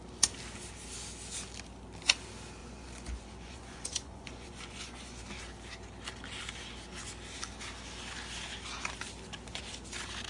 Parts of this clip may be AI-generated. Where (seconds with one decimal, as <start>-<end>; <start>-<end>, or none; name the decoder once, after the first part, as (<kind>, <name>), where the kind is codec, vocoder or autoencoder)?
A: 2.6-5.2 (vocoder, Vocos)